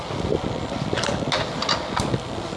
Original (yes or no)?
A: yes